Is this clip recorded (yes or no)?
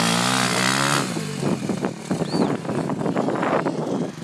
yes